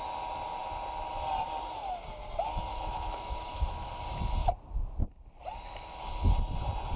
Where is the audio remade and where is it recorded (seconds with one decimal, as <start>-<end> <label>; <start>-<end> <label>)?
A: 0.0-2.7 recorded; 2.7-3.9 remade; 3.9-7.0 recorded